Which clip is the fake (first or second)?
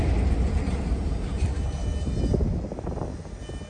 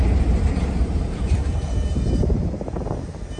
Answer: second